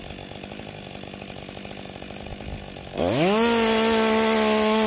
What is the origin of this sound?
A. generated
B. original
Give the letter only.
B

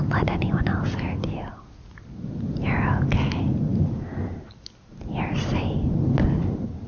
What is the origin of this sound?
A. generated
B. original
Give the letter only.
B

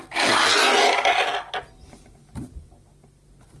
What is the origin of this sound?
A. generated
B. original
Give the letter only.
B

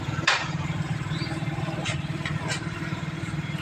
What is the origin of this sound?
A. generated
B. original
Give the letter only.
A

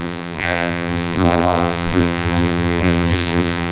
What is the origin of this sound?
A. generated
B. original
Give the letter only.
A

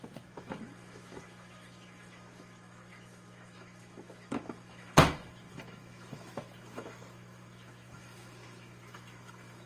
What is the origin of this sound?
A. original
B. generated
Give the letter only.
B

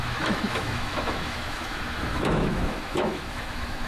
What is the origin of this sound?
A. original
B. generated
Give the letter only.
B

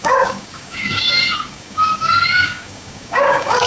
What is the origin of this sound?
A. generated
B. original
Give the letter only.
A